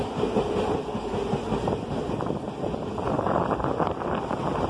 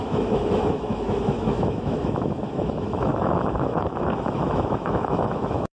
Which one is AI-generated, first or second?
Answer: second